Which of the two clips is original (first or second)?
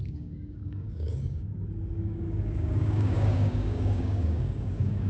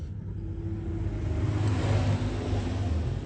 second